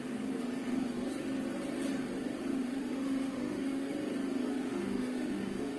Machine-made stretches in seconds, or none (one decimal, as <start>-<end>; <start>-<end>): 2.5-3.9; 4.5-5.8